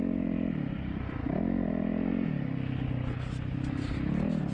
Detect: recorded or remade recorded